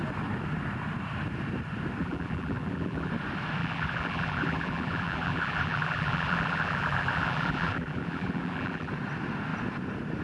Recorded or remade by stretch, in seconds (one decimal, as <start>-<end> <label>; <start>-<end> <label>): 0.0-2.0 recorded; 2.0-3.1 remade; 3.1-3.6 recorded; 3.6-8.9 remade; 8.9-10.2 recorded